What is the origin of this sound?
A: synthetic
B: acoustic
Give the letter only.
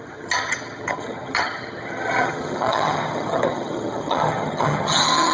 A